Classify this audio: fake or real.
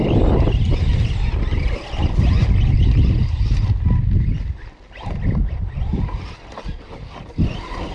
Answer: real